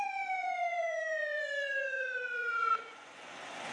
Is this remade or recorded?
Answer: remade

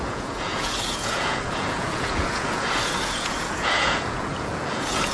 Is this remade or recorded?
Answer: remade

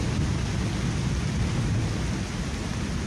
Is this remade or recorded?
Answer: recorded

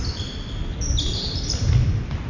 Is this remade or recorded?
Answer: recorded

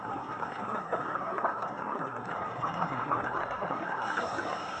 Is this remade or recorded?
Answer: remade